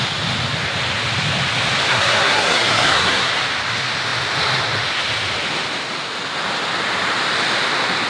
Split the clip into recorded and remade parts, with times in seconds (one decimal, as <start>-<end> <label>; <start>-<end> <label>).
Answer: 0.0-1.9 recorded; 1.9-3.4 remade; 3.4-8.1 recorded